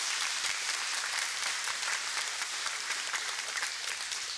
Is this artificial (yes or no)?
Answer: yes